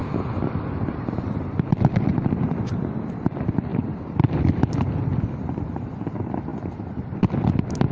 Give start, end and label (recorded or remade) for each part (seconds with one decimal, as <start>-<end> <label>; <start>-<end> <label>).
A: 0.0-7.9 recorded